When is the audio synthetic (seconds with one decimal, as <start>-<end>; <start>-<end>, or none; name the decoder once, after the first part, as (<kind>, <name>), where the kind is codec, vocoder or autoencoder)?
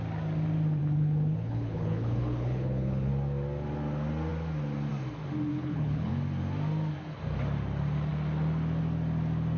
0.8-3.1 (codec, HILCodec); 5.5-6.1